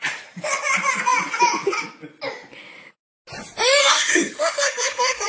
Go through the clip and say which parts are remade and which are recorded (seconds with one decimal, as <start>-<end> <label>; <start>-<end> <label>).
0.0-3.8 recorded; 3.8-5.3 remade